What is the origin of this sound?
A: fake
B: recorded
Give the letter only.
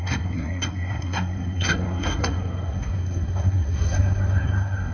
A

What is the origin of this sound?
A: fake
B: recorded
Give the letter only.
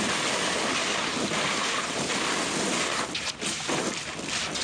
B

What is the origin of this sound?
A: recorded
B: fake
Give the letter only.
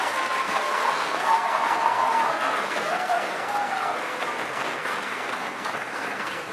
B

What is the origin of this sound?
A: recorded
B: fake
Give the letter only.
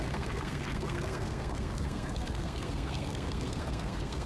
B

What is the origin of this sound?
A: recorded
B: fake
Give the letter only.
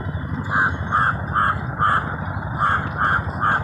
A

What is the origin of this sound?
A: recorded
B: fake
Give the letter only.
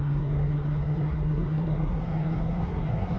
B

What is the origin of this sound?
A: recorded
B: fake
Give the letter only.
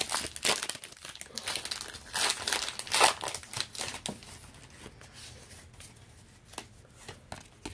A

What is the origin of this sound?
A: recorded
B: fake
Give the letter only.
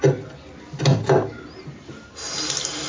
A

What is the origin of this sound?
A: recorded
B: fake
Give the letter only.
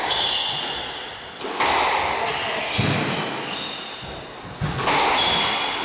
A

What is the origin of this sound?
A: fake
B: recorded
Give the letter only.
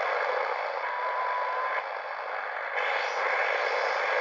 B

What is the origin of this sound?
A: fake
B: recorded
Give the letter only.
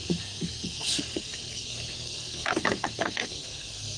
A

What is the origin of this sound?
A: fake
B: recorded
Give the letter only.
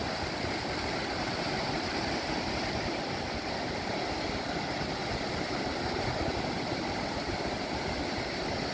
B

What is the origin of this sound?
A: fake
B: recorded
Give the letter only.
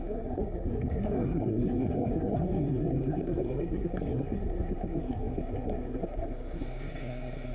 A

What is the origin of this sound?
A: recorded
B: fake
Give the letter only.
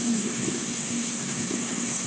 B